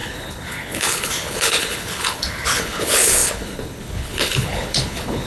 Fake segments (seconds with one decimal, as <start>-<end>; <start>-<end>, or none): 0.0-5.3

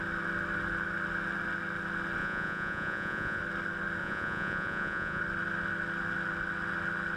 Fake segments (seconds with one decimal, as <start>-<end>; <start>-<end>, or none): 2.2-3.4; 4.0-5.2

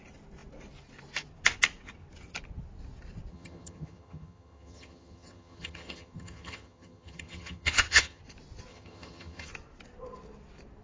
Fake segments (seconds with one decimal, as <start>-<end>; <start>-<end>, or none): 3.3-8.2; 8.7-9.5

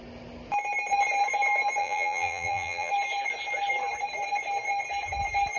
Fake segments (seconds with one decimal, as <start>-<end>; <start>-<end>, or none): 1.8-2.9

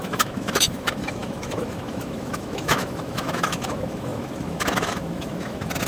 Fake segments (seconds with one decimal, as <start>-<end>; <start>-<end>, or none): 0.0-5.9

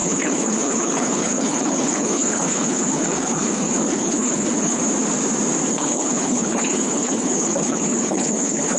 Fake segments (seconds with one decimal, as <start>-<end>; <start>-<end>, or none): 0.0-4.8; 5.7-8.8